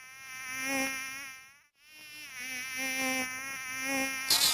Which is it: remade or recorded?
recorded